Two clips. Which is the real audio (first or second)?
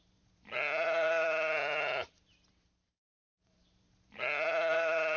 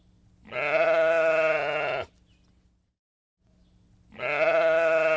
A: second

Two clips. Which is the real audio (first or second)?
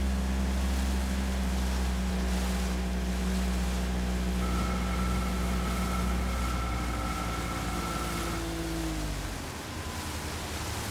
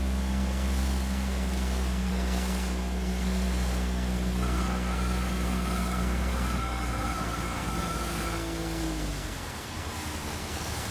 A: first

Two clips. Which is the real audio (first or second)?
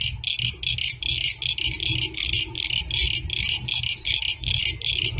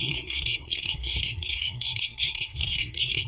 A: first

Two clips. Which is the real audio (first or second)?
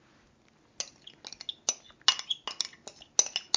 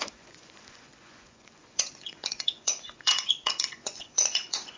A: first